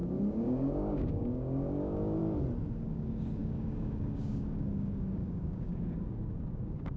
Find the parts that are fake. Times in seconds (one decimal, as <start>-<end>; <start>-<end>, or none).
0.0-2.2; 2.7-7.0